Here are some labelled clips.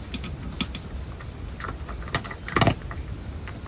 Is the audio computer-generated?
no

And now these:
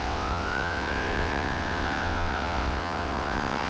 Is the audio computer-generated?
yes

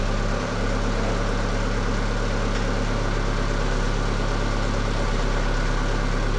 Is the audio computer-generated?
no